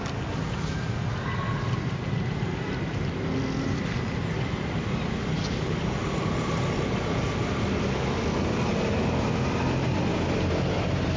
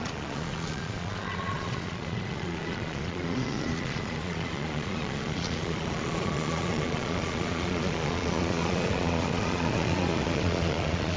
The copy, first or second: second